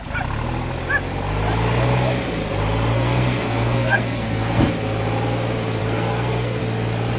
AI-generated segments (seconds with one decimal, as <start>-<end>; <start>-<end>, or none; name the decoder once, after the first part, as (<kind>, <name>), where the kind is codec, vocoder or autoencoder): 2.9-4.7 (codec, SNAC); 5.8-6.6